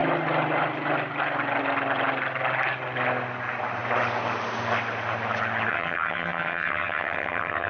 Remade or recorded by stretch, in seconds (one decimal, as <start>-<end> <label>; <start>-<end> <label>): 0.0-5.7 recorded; 5.7-7.7 remade